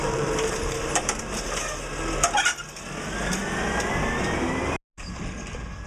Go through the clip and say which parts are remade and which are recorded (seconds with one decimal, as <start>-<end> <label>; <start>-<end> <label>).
0.0-1.9 remade; 1.9-5.9 recorded